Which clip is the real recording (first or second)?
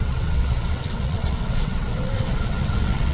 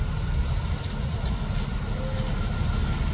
second